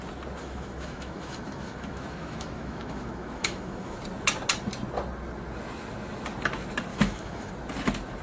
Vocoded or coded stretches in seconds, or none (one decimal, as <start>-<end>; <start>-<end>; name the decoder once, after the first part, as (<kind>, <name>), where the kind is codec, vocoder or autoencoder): 0.4-4.0 (autoencoder, DAC-VAE); 6.9-7.5